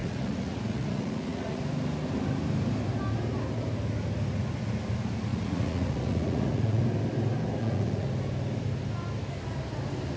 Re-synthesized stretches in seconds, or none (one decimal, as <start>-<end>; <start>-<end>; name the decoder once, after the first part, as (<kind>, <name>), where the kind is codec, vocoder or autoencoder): 0.0-1.6 (vocoder, Vocos); 5.3-6.8; 7.6-8.1